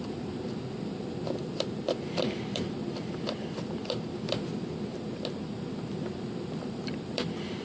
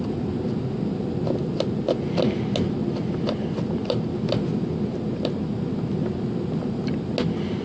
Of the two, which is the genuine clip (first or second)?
second